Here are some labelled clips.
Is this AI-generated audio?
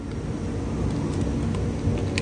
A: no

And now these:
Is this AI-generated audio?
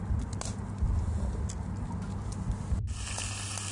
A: no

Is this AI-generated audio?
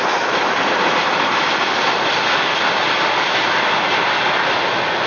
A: no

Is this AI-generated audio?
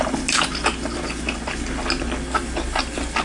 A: no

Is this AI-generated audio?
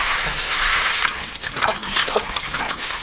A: yes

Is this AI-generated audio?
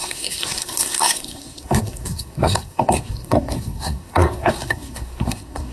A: yes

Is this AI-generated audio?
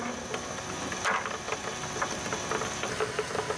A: no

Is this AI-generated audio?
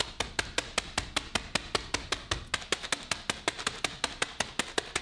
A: no